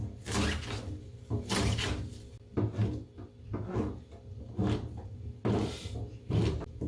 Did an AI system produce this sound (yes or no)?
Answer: no